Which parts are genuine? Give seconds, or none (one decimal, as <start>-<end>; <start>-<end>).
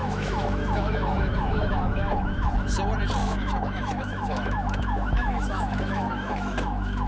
2.5-3.2